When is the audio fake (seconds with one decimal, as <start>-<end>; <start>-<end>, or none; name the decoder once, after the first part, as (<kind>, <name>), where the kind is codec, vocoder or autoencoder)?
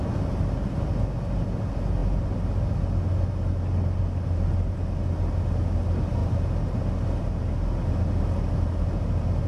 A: none